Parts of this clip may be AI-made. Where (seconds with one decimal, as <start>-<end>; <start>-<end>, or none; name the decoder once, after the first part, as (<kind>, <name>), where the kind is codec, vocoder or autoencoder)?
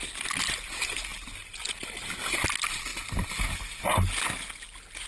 none